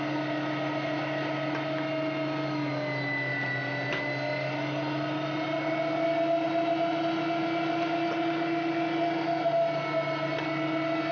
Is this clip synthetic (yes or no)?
no